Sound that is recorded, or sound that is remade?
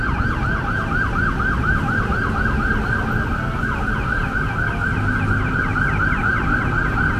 recorded